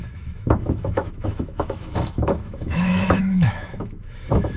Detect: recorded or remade remade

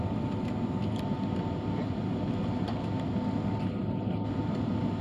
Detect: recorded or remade recorded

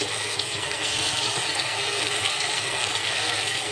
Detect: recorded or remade remade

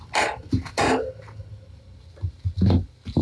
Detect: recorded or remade recorded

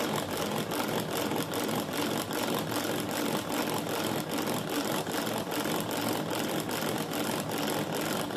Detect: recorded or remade recorded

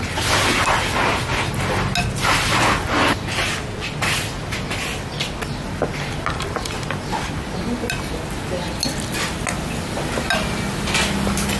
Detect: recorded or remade recorded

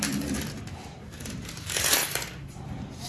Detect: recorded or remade remade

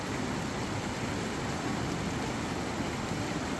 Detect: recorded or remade recorded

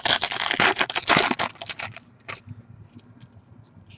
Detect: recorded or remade recorded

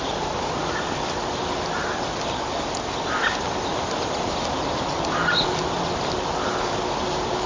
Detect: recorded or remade recorded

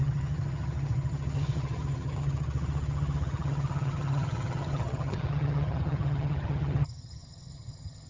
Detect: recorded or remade remade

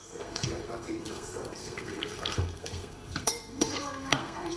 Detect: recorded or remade remade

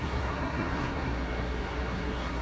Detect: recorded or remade remade